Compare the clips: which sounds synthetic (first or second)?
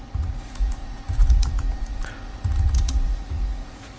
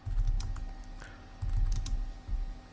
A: first